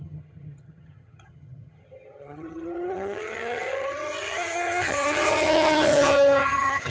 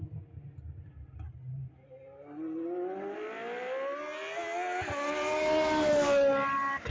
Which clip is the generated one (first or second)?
first